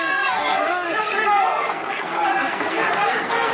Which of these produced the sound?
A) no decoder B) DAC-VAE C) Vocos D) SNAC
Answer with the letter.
D